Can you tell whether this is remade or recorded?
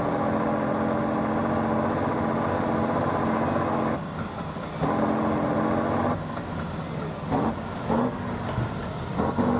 recorded